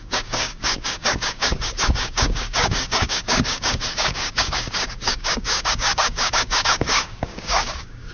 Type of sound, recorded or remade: remade